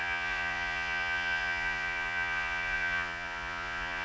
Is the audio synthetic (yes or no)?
yes